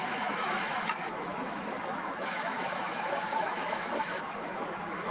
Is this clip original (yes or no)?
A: no